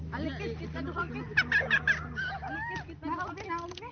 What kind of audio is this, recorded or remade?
recorded